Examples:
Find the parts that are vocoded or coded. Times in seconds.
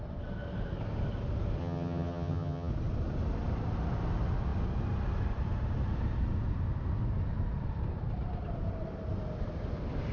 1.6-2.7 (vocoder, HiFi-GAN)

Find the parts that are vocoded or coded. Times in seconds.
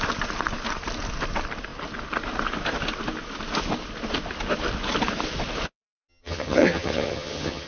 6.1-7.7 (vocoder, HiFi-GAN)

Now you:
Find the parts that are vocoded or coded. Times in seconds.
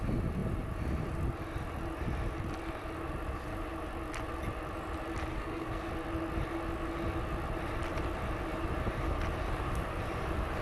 5.3-5.9 (codec, SNAC)